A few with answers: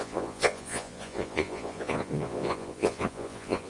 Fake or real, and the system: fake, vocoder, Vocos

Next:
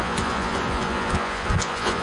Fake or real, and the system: fake, vocoder, Vocos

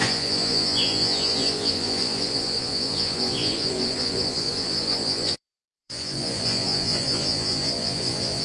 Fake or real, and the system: fake, vocoder, Vocos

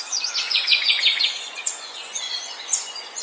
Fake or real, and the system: fake, vocoder, Vocos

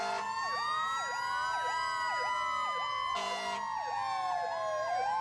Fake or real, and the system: real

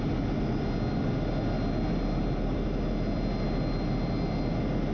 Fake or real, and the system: real